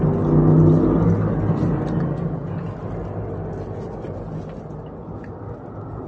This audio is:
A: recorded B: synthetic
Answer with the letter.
A